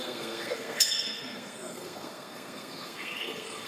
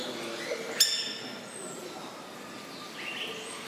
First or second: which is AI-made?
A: first